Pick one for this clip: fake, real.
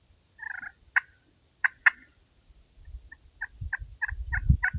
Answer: real